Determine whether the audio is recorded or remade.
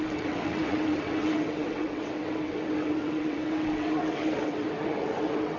remade